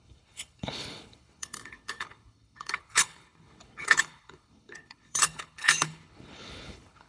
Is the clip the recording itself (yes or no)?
no